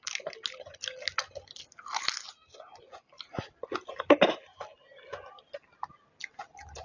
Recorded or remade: recorded